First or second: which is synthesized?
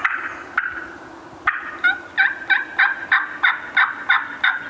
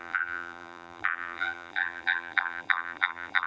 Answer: second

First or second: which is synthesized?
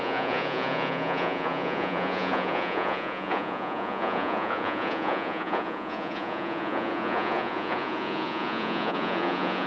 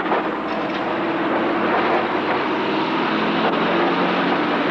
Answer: first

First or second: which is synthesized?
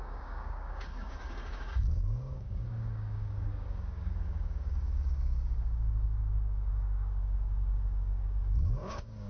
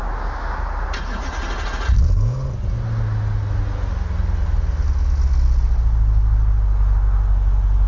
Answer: first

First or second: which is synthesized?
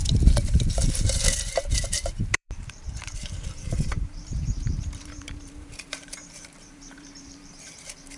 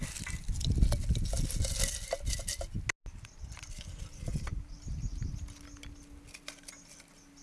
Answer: first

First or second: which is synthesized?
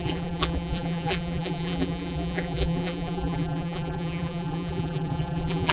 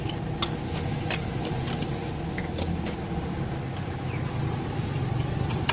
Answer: first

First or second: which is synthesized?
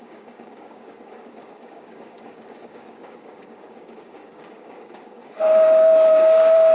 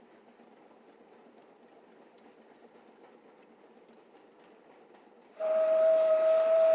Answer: first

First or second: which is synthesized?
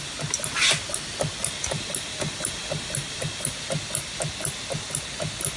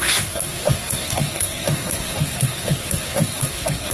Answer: second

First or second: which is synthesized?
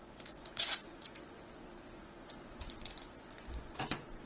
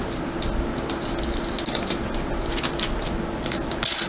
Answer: first